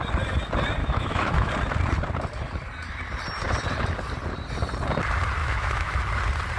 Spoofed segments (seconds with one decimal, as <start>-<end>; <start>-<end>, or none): 0.8-1.5; 5.4-6.0